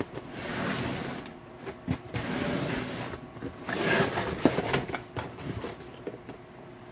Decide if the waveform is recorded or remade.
recorded